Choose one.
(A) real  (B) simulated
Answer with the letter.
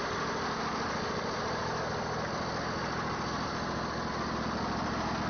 A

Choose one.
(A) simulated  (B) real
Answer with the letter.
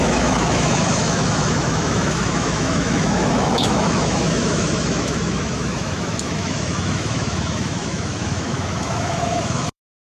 A